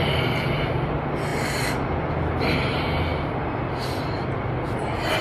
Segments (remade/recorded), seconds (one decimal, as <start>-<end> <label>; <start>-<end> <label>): 0.0-5.2 recorded